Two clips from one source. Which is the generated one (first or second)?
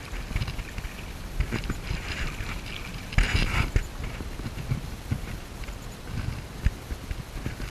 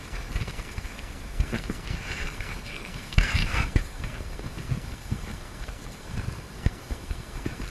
second